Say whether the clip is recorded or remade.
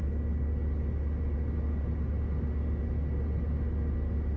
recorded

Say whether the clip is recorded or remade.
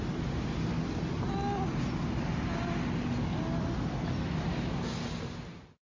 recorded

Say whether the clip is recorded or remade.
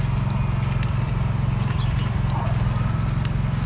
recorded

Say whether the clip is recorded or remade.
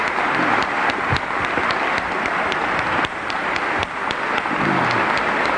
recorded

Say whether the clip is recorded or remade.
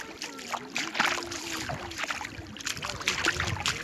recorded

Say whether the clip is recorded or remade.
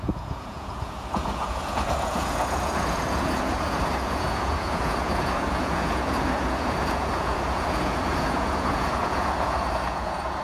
remade